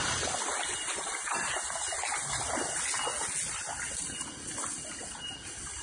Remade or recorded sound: recorded